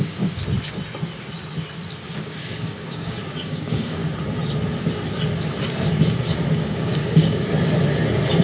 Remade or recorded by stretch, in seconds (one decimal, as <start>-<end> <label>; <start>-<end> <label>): 0.0-0.4 remade; 0.4-2.1 recorded; 2.1-4.0 remade; 4.0-6.5 recorded; 6.5-7.5 remade; 7.5-8.4 recorded